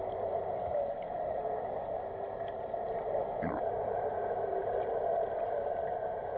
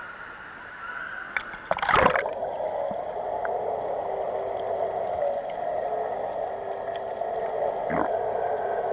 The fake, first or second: first